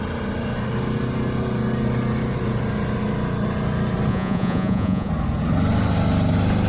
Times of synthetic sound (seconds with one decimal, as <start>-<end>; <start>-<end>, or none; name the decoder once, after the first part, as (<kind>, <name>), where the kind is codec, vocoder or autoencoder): 4.1-5.1 (vocoder, Vocos)